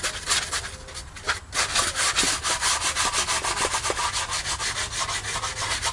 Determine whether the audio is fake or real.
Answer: real